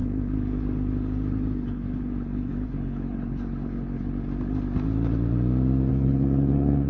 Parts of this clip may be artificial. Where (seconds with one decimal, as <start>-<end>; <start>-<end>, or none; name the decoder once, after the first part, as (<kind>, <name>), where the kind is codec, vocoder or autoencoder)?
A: 0.0-4.1 (codec, HILCodec); 5.9-6.9